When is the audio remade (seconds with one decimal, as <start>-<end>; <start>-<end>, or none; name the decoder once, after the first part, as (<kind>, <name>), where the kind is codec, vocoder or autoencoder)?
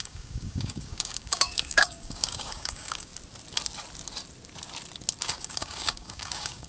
0.0-3.1 (codec, DAC); 5.2-6.7